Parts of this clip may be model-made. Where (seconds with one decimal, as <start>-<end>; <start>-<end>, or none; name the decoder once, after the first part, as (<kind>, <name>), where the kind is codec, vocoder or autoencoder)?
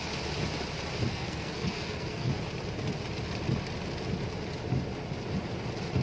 1.1-2.3 (codec, SNAC)